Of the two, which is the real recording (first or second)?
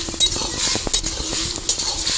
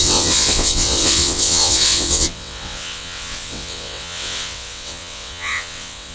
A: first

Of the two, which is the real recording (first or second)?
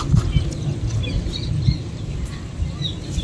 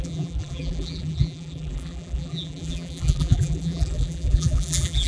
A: first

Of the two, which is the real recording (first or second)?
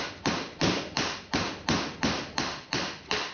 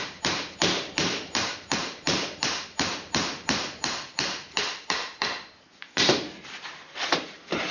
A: first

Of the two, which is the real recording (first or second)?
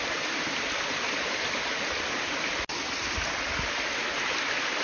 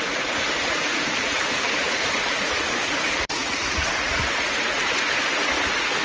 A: first